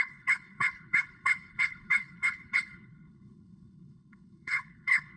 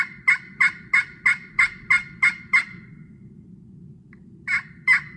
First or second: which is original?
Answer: second